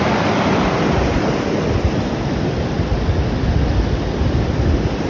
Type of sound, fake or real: real